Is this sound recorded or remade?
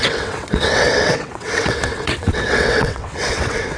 remade